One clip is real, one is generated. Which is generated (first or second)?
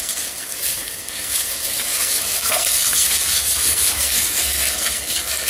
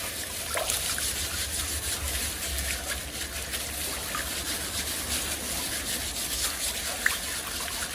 first